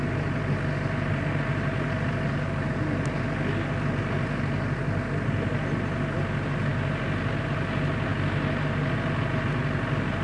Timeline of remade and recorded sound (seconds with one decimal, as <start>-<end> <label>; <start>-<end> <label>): 0.0-10.2 recorded